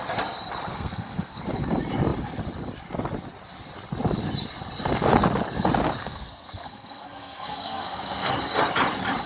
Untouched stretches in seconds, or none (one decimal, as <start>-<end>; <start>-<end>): 0.0-0.7; 1.4-6.0; 8.3-9.3